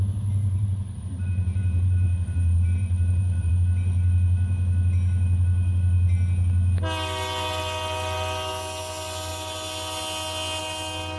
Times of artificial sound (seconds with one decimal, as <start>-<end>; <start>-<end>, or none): 0.4-3.5

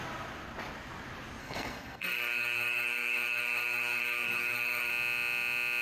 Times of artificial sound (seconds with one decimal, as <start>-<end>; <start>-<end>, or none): 1.4-4.9